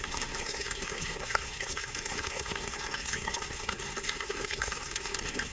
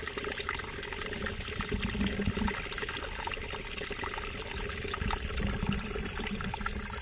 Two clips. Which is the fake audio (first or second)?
first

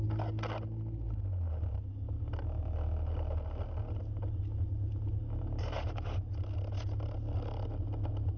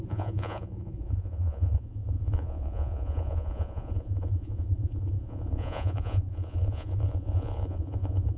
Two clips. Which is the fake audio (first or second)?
second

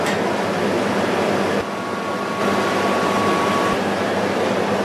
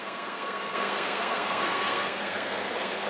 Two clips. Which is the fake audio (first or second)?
second